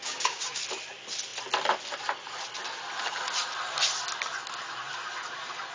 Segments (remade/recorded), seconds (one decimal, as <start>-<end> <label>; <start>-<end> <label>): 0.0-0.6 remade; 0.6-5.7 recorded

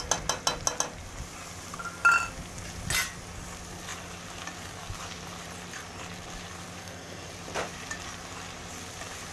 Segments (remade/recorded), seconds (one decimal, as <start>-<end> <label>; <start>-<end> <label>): 0.0-6.8 recorded; 6.8-7.3 remade; 7.3-9.3 recorded

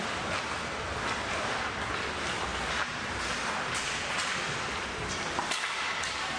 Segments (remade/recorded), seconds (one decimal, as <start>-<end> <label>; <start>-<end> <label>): 0.0-6.4 recorded

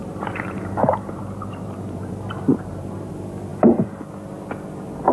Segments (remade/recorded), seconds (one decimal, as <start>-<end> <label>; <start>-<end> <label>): 0.0-3.1 remade; 3.1-5.1 recorded

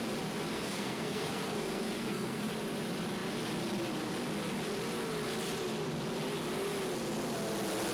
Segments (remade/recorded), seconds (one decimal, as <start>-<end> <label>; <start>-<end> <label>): 0.0-0.5 recorded; 0.5-2.5 remade; 2.5-7.9 recorded